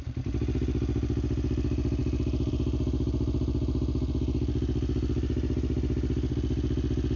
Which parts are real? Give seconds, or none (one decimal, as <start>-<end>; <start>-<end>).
0.0-7.2